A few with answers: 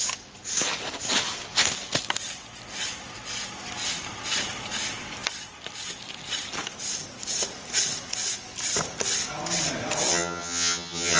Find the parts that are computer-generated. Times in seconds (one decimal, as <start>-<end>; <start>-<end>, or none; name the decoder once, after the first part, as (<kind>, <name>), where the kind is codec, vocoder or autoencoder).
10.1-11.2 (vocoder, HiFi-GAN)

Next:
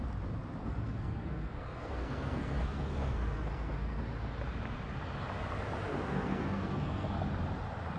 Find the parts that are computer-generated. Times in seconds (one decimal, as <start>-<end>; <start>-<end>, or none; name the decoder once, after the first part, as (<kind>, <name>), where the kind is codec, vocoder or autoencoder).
0.6-4.0 (codec, SNAC); 5.9-7.1

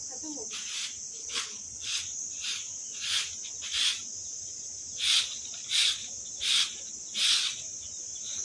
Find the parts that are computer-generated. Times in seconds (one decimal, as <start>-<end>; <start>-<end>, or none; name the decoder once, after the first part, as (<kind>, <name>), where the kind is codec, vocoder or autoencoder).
1.2-2.0 (codec, HILCodec)